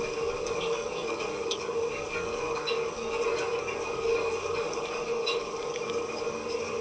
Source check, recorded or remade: remade